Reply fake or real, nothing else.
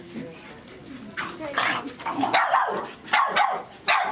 real